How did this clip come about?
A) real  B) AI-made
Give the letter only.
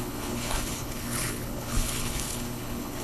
B